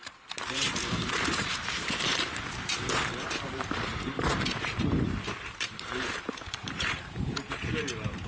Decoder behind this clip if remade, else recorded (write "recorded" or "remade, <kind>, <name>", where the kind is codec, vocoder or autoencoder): remade, vocoder, BigVGAN v2